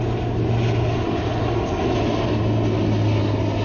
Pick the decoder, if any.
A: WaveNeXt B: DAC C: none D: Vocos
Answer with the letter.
C